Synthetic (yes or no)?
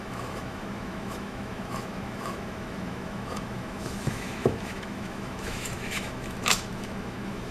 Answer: yes